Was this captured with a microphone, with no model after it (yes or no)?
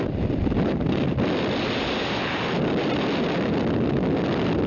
yes